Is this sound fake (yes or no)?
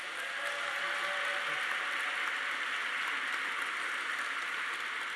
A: no